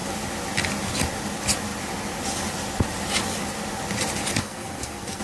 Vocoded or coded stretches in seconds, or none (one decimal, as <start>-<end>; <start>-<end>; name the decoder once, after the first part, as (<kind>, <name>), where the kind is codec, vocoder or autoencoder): 4.4-5.2 (codec, SNAC)